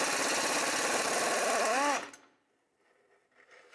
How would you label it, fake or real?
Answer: real